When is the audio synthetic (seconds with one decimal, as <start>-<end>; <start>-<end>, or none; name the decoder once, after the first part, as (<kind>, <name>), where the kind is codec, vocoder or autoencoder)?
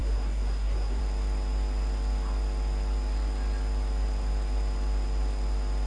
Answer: 0.0-1.0 (codec, SNAC)